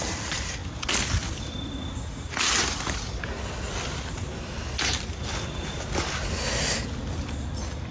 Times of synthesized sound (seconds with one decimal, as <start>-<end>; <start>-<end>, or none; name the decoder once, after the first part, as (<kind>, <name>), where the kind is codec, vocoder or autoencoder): none